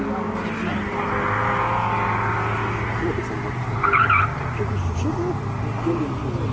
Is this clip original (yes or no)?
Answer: yes